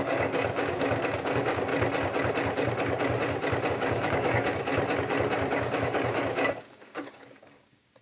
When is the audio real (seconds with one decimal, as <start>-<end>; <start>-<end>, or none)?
1.7-3.7; 4.7-5.5